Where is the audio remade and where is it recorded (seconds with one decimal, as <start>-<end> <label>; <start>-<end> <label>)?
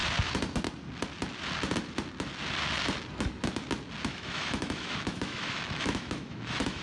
0.0-4.1 recorded; 4.1-6.8 remade